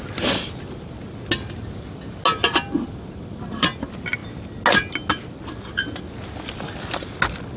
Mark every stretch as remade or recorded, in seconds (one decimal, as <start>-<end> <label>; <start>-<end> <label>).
0.0-7.6 recorded